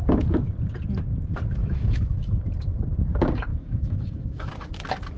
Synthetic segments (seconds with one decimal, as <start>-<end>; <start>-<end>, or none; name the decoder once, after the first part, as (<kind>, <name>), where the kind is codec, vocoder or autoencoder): 1.6-2.5 (autoencoder, DAC-VAE); 3.5-4.5